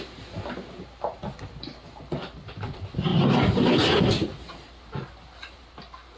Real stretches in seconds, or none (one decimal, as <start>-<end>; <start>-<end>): 0.0-6.2